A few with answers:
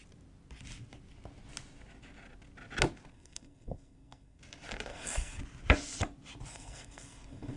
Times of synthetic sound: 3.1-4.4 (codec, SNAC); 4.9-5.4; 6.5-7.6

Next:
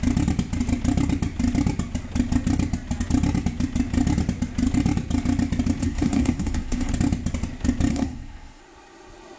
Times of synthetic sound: 5.8-6.9 (codec, SNAC); 7.9-8.6

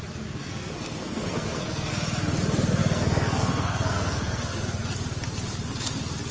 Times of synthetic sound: 0.4-1.9 (codec, SNAC); 2.8-4.6